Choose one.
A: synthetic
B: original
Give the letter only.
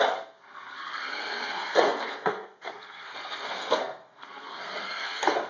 A